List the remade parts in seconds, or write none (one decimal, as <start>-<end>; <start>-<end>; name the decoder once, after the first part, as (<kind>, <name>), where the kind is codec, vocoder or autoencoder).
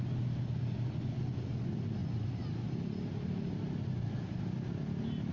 none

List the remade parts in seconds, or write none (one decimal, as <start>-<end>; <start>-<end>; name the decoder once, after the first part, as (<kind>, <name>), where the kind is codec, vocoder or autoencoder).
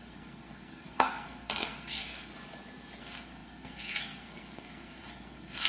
0.0-2.3 (codec, SNAC); 3.0-5.7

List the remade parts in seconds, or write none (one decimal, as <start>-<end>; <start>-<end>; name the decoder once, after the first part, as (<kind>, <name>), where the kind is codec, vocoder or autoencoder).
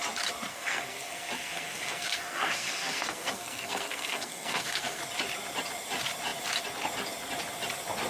0.5-5.0 (codec, SNAC)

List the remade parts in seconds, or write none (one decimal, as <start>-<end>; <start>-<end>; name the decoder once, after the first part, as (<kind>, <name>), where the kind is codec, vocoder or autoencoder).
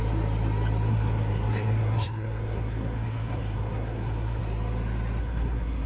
0.9-4.4 (codec, SNAC); 5.2-5.9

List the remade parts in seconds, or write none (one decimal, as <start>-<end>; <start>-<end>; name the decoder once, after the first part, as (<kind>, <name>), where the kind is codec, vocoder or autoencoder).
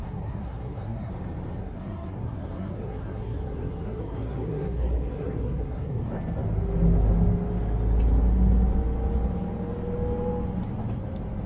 0.0-1.1 (codec, SNAC); 1.6-6.1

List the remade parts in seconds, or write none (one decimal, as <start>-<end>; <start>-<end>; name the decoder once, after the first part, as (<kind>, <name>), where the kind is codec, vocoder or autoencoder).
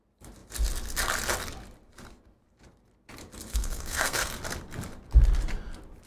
3.5-4.3 (codec, SNAC)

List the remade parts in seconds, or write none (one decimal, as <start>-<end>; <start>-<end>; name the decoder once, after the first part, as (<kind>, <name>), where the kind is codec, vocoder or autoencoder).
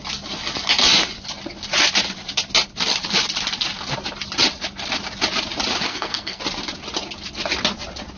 5.9-6.4 (codec, SNAC)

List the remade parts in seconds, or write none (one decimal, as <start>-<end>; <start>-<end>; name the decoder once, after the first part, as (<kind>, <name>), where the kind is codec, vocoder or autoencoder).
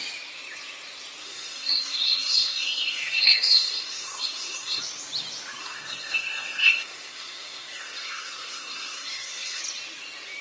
1.2-4.8 (codec, SNAC); 5.6-9.6